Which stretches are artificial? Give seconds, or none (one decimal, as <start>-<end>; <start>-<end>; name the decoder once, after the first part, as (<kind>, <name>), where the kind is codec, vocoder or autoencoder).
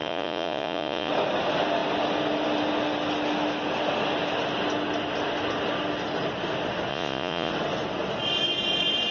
0.0-1.1 (vocoder, Vocos); 6.9-7.5